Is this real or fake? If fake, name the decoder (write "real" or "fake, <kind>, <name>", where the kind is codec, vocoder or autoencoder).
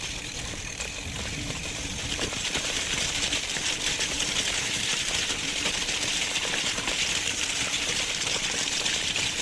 fake, vocoder, BigVGAN v2